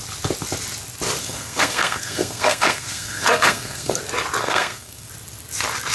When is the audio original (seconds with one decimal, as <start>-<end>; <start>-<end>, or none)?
0.0-1.2; 4.0-4.4; 5.1-5.9